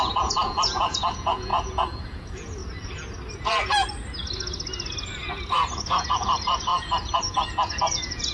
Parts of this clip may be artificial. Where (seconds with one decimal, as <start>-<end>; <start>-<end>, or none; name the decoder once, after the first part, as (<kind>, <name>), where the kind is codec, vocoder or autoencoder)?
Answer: 0.0-2.6 (vocoder, Vocos); 5.1-8.3